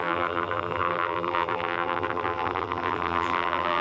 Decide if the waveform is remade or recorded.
remade